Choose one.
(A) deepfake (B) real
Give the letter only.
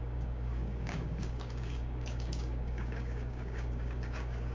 A